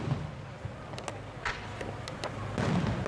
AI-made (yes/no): no